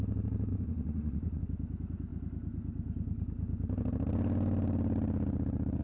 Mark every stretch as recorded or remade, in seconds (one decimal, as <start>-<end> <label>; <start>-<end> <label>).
0.0-0.5 recorded; 0.5-1.4 remade; 1.4-5.8 recorded